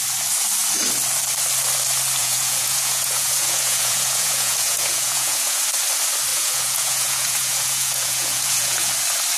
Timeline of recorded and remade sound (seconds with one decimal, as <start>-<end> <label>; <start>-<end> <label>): 0.0-2.2 recorded; 2.2-5.6 remade; 5.6-6.3 recorded; 6.3-8.9 remade; 8.9-9.4 recorded